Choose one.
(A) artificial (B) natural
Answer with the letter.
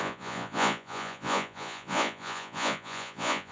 A